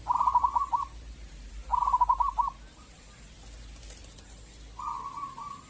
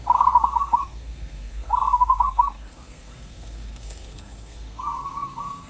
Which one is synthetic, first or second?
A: second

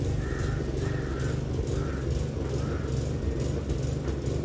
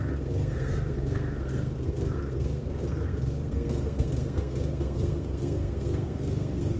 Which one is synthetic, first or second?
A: second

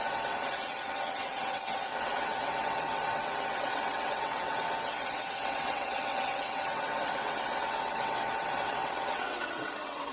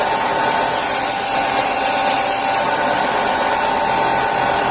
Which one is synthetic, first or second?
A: first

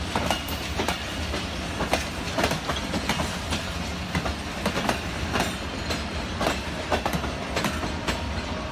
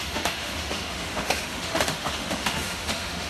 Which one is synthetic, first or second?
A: second